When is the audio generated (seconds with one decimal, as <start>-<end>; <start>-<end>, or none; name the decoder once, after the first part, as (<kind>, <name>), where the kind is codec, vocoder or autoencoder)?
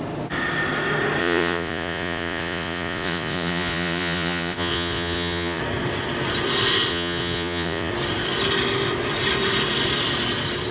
1.2-5.6 (vocoder, Vocos); 6.9-7.9